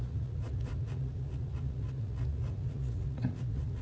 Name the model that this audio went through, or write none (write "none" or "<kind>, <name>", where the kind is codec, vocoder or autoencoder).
vocoder, Vocos